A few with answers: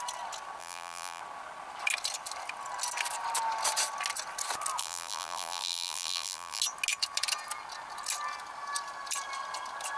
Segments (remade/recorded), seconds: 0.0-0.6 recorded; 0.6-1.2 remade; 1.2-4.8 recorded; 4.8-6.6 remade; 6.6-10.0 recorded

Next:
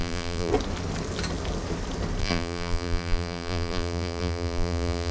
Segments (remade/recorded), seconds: 0.0-0.5 remade; 0.5-2.2 recorded; 2.2-5.1 remade

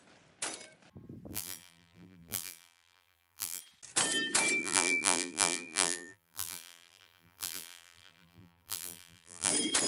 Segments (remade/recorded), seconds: 0.0-1.3 recorded; 1.3-3.6 remade; 3.6-4.6 recorded; 4.6-9.5 remade; 9.5-9.9 recorded

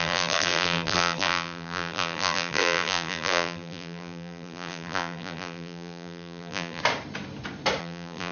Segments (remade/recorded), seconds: 0.0-6.8 remade; 6.8-7.8 recorded; 7.8-8.3 remade

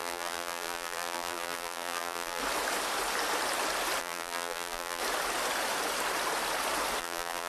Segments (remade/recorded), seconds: 0.0-2.4 remade; 2.4-4.0 recorded; 4.0-5.0 remade; 5.0-7.0 recorded; 7.0-7.5 remade

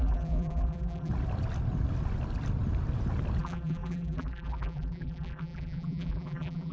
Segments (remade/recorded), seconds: 0.0-1.1 remade; 1.1-3.4 recorded; 3.4-6.7 remade

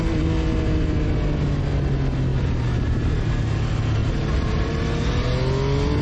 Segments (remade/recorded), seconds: 0.0-2.3 recorded; 2.3-3.4 remade; 3.4-4.0 recorded; 4.0-4.7 remade; 4.7-6.0 recorded